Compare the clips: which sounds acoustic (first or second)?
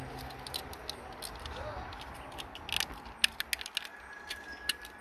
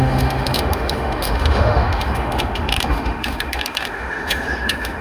first